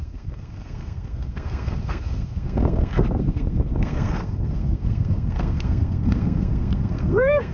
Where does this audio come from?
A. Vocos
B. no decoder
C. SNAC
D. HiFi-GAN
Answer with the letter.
C